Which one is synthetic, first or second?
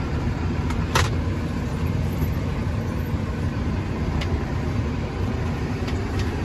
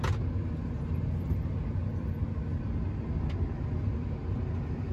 first